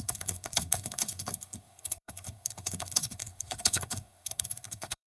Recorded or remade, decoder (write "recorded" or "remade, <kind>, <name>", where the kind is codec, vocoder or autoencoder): remade, codec, SNAC